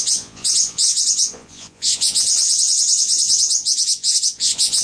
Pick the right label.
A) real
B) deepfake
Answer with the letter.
B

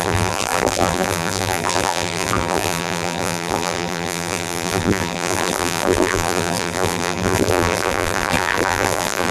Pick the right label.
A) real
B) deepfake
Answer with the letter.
B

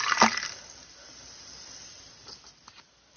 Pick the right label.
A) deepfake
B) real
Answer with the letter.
B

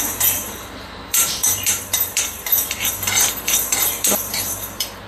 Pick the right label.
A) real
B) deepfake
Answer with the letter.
B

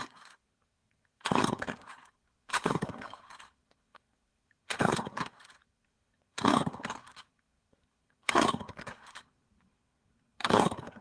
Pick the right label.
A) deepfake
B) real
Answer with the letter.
A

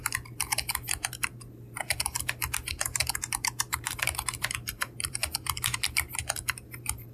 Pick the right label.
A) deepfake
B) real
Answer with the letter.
A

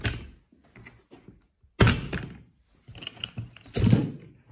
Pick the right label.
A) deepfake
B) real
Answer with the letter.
B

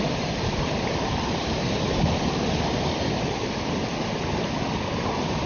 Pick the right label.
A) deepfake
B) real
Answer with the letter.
B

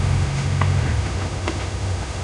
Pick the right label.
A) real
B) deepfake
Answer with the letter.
B